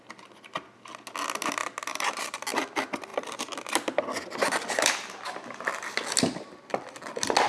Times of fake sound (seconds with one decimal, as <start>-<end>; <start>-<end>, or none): none